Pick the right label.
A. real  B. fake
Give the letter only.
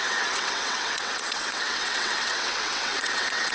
B